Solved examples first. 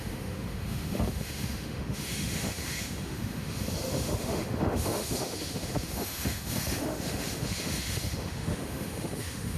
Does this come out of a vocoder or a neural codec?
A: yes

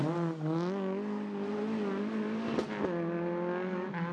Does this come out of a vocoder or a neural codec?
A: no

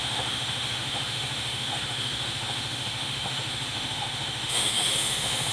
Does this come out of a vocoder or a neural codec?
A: yes